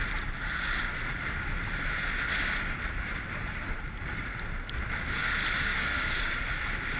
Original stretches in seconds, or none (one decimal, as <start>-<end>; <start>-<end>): 0.0-5.7; 6.3-7.0

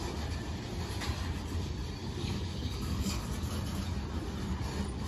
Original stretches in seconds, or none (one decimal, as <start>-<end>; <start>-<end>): 0.0-2.0; 3.4-5.1

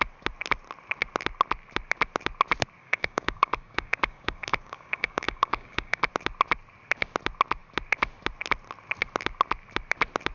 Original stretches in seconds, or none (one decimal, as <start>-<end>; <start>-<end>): 0.0-2.8; 6.1-10.3

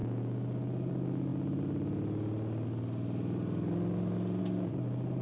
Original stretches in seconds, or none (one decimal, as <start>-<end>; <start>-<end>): 0.0-5.2

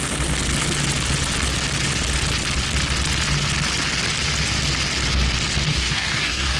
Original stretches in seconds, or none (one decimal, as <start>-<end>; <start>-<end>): 0.0-5.7

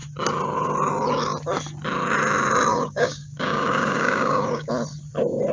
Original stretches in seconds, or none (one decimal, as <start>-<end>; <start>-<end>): 0.0-2.7; 4.7-5.5

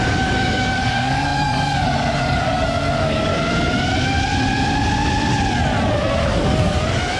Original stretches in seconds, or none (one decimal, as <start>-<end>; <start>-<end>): 3.3-6.4